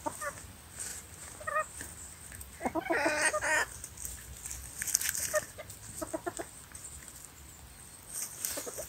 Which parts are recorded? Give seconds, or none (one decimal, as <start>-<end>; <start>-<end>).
0.0-0.9; 1.8-8.9